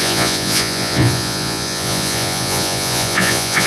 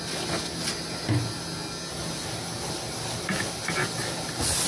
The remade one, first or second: first